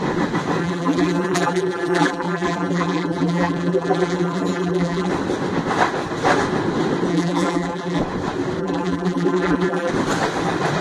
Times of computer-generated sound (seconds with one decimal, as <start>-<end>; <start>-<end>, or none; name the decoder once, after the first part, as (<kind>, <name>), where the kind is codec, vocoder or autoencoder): 0.6-5.1 (vocoder, BigVGAN v2); 7.1-8.0; 8.6-9.9